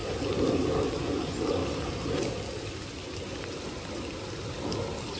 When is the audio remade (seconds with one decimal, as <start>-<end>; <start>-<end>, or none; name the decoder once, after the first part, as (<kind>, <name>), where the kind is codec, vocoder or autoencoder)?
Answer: none

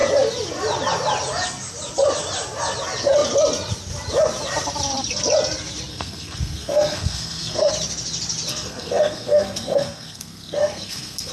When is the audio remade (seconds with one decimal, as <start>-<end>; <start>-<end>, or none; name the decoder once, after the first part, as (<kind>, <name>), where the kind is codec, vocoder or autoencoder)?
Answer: 5.9-7.7 (codec, SNAC); 8.5-11.3

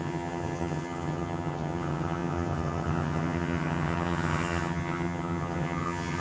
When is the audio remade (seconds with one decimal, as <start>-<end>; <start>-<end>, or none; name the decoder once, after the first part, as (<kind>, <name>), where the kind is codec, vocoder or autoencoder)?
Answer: 0.0-6.2 (vocoder, HiFi-GAN)

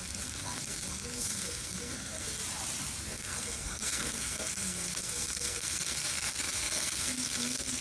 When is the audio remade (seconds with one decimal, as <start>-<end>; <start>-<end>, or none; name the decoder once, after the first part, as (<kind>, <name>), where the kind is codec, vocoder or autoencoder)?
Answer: 0.0-2.4 (codec, SNAC); 3.0-7.8

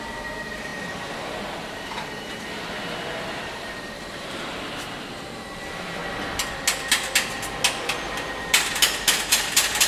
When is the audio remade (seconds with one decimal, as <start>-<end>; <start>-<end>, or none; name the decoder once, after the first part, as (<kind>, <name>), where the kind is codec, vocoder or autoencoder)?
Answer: 0.0-6.0 (vocoder, BigVGAN v2); 8.4-9.9

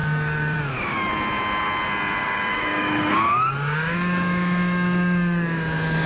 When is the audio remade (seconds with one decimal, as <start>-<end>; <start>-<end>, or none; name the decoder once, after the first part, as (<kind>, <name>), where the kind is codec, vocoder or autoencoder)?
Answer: 0.0-1.1 (codec, DAC); 2.2-6.1

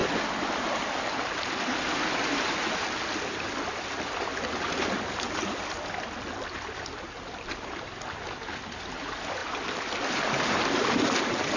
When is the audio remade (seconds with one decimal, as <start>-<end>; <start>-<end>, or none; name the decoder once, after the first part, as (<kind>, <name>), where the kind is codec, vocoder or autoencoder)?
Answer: none

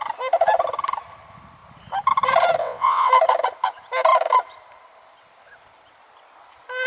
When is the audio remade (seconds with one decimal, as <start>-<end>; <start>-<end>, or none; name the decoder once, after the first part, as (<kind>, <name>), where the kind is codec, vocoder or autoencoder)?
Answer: 2.6-3.1 (vocoder, WaveNeXt)